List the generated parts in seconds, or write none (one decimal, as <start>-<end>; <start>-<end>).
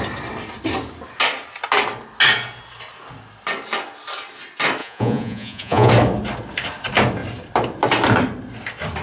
4.8-5.9